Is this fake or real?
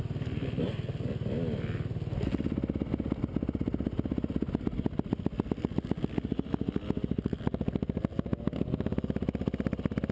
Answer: real